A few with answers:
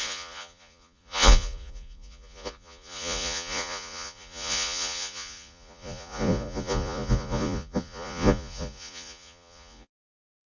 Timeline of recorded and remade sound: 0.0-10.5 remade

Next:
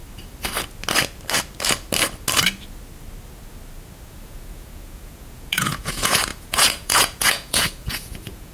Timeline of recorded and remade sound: 0.0-4.1 recorded; 4.1-8.5 remade